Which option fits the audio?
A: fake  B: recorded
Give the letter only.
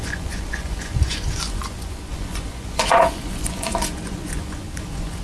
A